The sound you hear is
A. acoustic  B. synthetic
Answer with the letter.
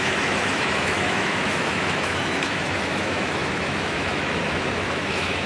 B